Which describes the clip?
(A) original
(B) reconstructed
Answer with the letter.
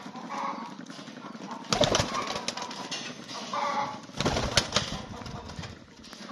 A